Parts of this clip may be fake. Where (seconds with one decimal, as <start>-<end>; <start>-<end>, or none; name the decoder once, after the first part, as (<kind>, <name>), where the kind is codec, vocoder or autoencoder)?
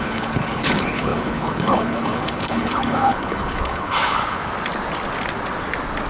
0.0-4.4 (codec, HILCodec)